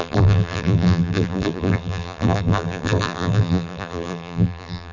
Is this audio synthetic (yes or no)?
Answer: yes